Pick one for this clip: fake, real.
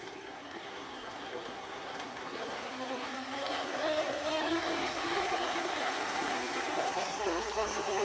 fake